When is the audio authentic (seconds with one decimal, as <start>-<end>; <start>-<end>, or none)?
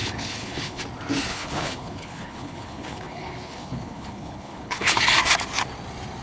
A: 0.8-1.3; 5.0-6.2